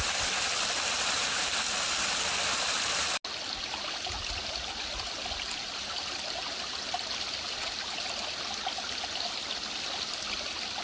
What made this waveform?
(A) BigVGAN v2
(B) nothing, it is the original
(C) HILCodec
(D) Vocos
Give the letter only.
B